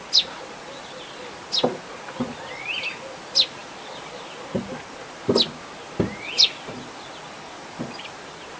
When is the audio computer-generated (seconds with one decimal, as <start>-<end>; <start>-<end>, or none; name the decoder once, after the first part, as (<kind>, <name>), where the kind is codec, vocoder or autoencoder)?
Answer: none